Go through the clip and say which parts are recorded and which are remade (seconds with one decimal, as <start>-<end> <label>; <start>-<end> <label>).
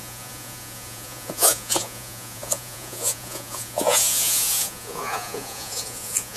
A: 0.0-6.4 remade